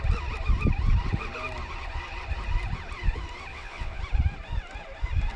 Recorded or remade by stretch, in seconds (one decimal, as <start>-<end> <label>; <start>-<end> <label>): 0.0-3.5 recorded; 3.5-4.0 remade; 4.0-5.4 recorded